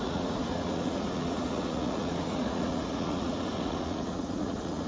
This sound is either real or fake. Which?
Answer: fake